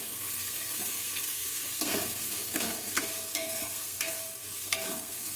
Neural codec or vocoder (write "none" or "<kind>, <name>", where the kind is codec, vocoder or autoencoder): codec, SNAC